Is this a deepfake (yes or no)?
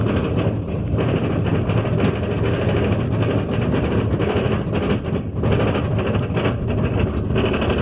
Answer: no